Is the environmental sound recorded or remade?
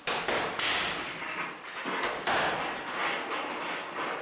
recorded